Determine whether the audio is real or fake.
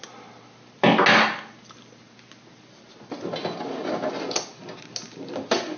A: real